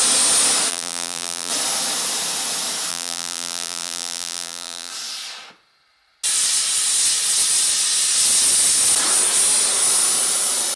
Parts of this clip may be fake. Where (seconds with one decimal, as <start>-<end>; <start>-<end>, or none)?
0.7-1.5; 2.9-4.9